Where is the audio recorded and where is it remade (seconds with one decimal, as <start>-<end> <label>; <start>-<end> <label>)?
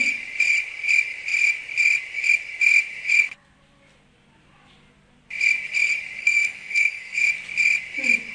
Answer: 0.0-6.2 recorded; 6.2-7.2 remade; 7.2-8.3 recorded